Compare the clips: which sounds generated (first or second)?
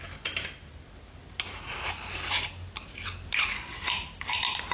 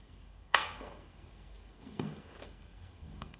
second